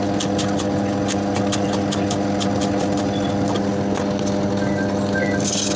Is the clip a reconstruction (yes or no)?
no